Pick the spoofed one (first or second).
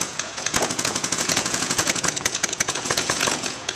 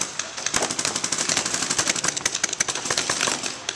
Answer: first